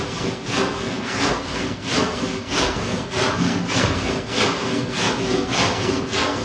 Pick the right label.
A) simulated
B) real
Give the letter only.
A